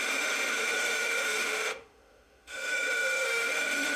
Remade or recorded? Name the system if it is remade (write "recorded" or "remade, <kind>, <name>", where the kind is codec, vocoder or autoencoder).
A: remade, autoencoder, DAC-VAE